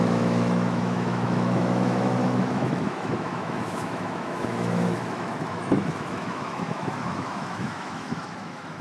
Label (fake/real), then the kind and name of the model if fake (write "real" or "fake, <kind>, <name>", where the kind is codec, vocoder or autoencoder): fake, autoencoder, DAC-VAE